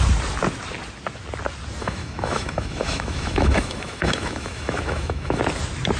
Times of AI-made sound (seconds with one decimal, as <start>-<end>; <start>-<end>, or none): 1.8-5.4